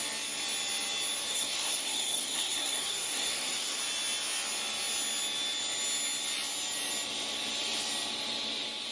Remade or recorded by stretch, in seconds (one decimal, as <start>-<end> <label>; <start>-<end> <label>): 0.0-1.3 recorded; 1.3-3.8 remade; 3.8-8.9 recorded